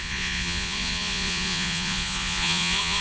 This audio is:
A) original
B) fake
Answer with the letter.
B